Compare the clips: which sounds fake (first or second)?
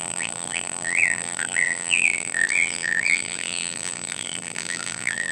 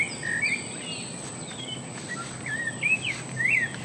first